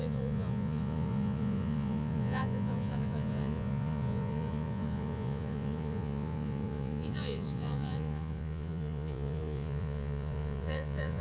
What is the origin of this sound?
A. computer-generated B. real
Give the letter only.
A